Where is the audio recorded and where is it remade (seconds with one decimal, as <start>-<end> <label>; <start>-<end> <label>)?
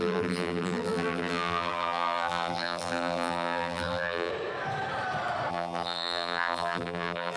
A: 0.0-4.3 remade; 4.3-5.5 recorded; 5.5-7.4 remade